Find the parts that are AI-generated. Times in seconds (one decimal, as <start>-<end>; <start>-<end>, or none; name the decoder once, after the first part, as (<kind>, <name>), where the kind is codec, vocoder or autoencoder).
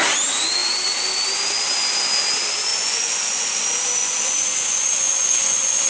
2.7-3.6 (vocoder, Vocos); 4.0-5.9